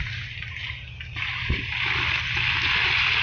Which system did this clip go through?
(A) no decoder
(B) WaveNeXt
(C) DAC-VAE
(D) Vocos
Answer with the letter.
A